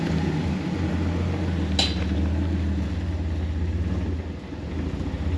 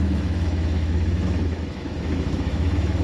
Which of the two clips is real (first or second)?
first